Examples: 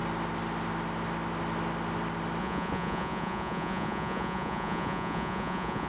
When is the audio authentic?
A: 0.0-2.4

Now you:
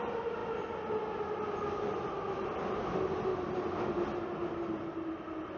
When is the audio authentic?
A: 0.0-5.6